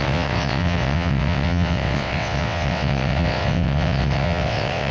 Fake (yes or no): yes